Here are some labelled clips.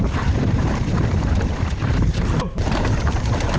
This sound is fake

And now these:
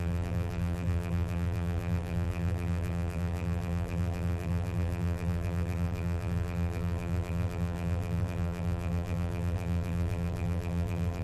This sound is fake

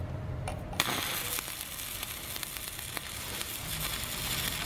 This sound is fake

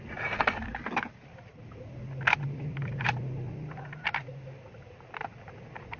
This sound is real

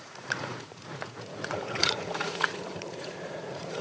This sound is fake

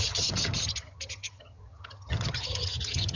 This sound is fake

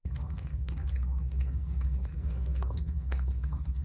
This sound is fake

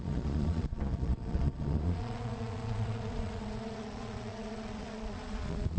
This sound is fake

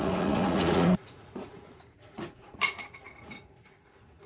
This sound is fake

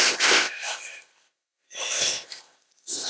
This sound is fake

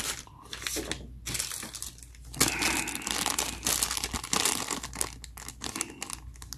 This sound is real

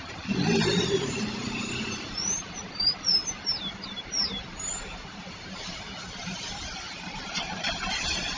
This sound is fake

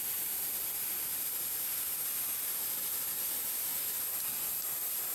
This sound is real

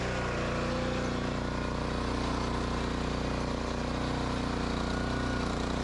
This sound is real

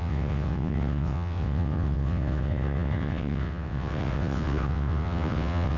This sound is fake